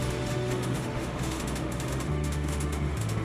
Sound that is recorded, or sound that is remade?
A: remade